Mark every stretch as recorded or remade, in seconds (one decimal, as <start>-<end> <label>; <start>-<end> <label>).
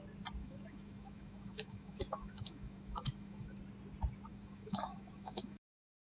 0.0-0.4 recorded; 0.4-3.6 remade; 3.6-4.3 recorded; 4.3-6.2 remade